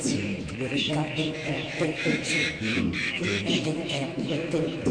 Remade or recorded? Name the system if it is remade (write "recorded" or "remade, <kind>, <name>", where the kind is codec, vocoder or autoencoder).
remade, autoencoder, DAC-VAE